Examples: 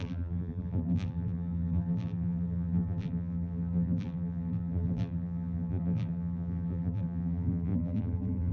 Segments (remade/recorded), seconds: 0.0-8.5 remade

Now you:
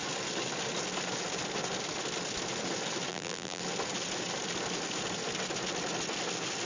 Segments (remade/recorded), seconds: 0.0-3.1 recorded; 3.1-3.6 remade; 3.6-6.6 recorded

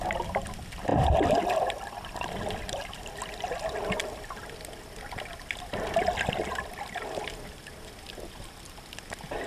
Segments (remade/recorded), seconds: 0.0-9.5 recorded

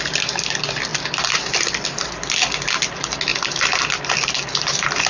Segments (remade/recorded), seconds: 0.0-0.9 recorded; 0.9-2.1 remade; 2.1-5.1 recorded

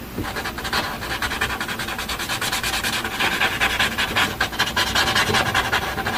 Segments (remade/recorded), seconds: 0.0-6.2 recorded

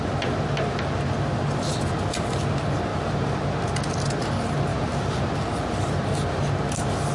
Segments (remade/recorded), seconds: 0.0-2.9 recorded; 2.9-3.7 remade; 3.7-4.7 recorded; 4.7-5.3 remade; 5.3-5.8 recorded; 5.8-6.3 remade; 6.3-7.1 recorded

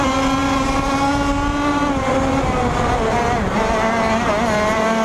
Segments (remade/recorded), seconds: 0.0-5.0 recorded

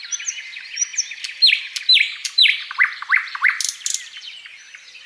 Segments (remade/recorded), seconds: 0.0-2.2 recorded; 2.2-2.8 remade; 2.8-5.1 recorded